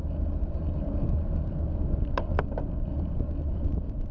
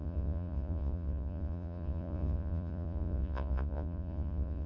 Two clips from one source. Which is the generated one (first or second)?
second